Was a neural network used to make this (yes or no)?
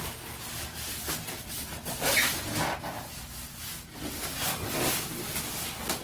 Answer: no